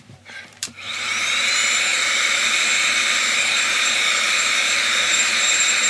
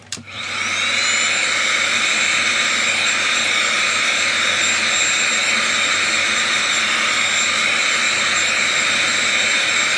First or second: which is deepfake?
first